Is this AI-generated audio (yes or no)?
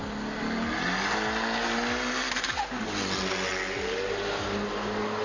no